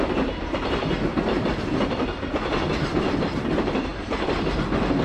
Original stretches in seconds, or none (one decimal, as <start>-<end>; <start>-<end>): 0.0-5.0